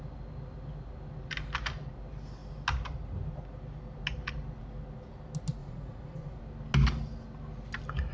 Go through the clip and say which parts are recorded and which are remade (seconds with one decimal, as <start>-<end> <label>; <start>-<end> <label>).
0.0-5.6 recorded; 5.6-6.4 remade; 6.4-8.1 recorded